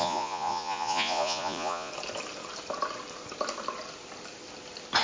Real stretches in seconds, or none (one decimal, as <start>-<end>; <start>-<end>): 1.9-5.0